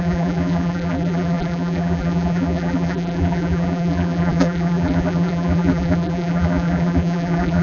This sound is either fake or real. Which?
fake